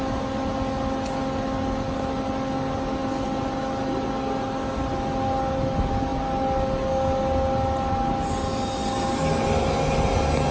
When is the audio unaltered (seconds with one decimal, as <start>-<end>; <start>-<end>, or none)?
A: 0.0-10.5